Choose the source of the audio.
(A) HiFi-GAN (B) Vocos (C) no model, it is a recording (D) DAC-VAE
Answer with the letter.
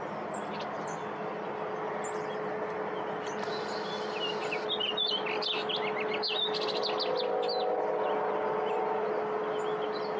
C